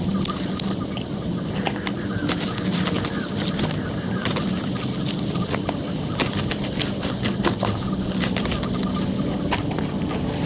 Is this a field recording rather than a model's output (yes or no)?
yes